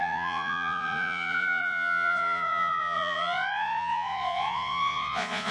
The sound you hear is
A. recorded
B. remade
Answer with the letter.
B